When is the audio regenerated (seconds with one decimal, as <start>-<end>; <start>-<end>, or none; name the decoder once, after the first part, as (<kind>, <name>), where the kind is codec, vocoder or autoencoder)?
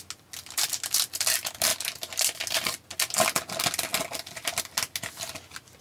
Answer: none